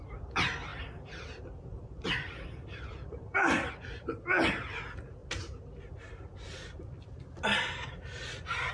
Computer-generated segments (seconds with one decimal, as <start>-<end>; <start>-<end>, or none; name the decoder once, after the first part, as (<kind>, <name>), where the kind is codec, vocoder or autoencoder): 0.7-3.7 (vocoder, BigVGAN v2)

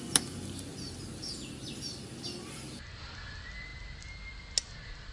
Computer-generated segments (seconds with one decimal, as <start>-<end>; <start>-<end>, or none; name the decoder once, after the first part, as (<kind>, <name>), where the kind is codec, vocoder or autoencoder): none

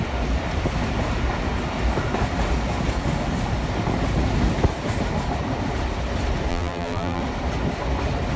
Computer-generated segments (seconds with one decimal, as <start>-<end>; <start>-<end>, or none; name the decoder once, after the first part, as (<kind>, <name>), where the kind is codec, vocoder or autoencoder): 6.5-7.2 (vocoder, BigVGAN v2)

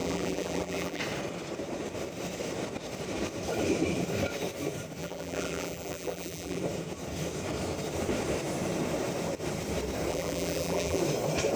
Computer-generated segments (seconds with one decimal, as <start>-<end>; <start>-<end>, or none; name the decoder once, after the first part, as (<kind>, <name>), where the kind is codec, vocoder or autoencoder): 0.0-1.0 (vocoder, BigVGAN v2); 5.0-6.6; 10.1-11.0

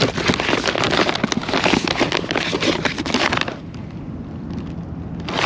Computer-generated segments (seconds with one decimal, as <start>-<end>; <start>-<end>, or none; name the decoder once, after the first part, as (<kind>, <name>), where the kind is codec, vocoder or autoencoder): none

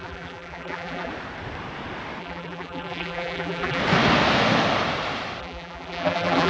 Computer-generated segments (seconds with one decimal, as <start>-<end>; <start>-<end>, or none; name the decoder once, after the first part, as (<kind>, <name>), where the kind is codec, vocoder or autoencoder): 0.0-1.1 (vocoder, BigVGAN v2); 2.2-3.8; 5.4-6.5

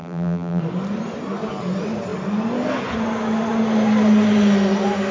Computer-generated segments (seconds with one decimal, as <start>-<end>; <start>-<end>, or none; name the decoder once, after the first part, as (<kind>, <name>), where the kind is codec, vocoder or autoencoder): 0.0-0.6 (vocoder, BigVGAN v2)

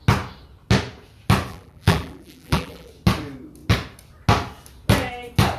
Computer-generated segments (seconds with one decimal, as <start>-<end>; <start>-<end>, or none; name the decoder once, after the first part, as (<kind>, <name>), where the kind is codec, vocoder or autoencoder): 1.5-2.9 (vocoder, BigVGAN v2)